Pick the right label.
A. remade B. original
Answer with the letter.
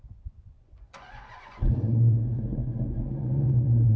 A